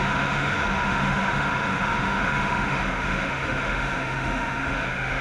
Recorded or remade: remade